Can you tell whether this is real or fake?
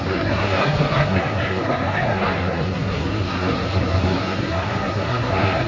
fake